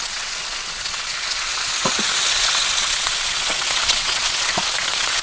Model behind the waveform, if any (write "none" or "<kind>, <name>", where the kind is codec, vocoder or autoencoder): vocoder, WaveNeXt